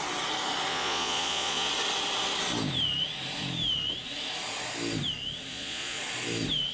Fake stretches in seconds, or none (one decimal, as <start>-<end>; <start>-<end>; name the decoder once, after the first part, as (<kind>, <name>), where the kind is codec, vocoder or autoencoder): 0.7-1.7 (vocoder, Vocos); 5.5-6.0